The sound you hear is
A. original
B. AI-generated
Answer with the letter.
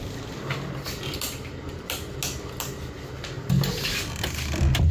A